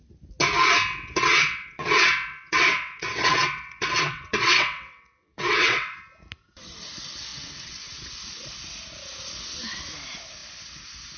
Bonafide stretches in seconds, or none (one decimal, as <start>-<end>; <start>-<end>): 0.0-0.9; 6.0-7.3; 8.1-11.2